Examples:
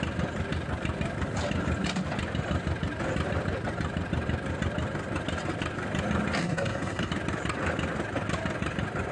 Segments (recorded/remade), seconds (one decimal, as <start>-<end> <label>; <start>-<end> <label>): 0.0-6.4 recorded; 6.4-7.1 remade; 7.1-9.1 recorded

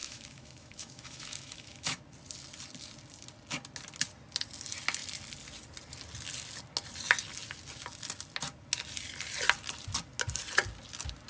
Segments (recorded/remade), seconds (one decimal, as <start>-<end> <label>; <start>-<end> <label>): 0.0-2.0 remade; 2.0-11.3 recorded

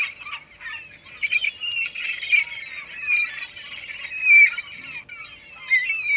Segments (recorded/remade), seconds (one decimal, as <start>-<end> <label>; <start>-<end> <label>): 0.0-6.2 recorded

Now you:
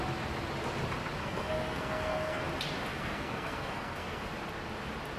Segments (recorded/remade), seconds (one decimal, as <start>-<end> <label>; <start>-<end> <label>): 0.0-1.2 recorded; 1.2-2.4 remade; 2.4-2.9 recorded; 2.9-4.2 remade; 4.2-5.2 recorded